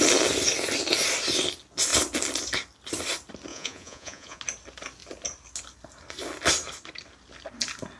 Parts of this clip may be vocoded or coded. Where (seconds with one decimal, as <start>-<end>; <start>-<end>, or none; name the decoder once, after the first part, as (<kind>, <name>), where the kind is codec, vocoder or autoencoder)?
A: 3.5-4.4 (vocoder, Vocos)